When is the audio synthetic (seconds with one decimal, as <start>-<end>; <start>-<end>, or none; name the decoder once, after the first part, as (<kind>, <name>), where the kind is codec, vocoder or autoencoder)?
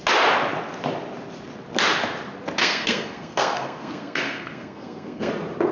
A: 2.6-5.3 (codec, SNAC)